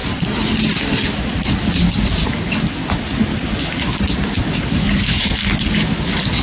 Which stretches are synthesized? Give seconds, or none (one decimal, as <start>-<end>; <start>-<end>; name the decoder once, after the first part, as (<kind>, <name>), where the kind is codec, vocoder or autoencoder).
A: 3.3-4.0 (codec, DAC)